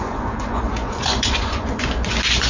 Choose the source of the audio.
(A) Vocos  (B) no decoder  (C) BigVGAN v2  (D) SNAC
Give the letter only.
A